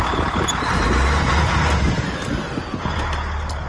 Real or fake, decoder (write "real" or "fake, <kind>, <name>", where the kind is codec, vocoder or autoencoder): real